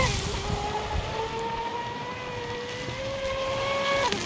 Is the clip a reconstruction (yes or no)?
no